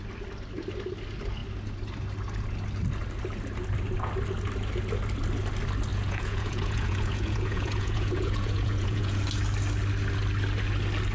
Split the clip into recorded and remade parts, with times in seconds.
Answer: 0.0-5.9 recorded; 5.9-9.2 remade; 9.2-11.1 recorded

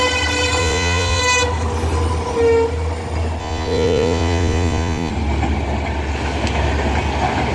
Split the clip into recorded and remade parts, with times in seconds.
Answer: 0.0-0.6 recorded; 0.6-1.2 remade; 1.2-3.4 recorded; 3.4-5.1 remade; 5.1-7.5 recorded

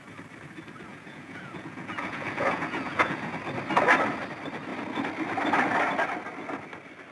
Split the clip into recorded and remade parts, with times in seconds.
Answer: 0.0-0.9 recorded; 0.9-3.3 remade; 3.3-7.1 recorded